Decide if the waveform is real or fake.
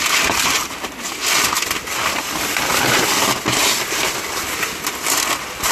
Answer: real